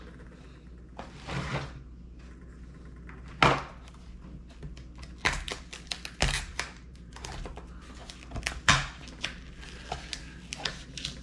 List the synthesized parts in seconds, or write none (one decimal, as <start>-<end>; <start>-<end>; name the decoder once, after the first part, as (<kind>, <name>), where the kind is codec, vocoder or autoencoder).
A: 6.5-7.3 (vocoder, BigVGAN v2)